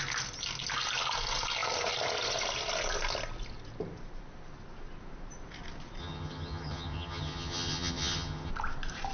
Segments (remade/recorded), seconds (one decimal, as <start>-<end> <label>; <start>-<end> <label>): 0.0-6.0 recorded; 6.0-8.5 remade; 8.5-9.1 recorded